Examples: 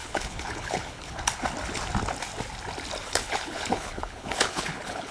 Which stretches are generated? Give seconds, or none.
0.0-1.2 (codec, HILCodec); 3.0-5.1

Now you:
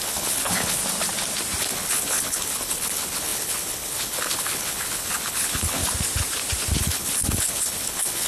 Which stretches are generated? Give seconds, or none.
0.0-0.8 (codec, HILCodec); 1.6-5.8; 6.8-8.3

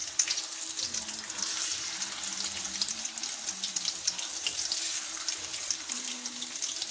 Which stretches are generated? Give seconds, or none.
none

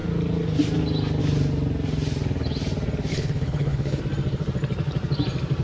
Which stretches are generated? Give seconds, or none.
3.1-4.0 (codec, HILCodec)

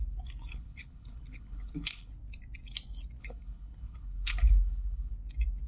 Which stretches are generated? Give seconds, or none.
0.5-2.1 (codec, HILCodec); 3.2-5.1

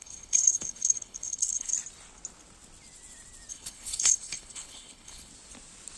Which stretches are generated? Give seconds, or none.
0.0-1.7 (codec, HILCodec); 3.5-5.3